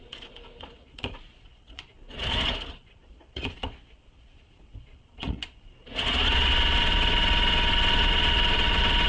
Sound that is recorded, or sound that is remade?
remade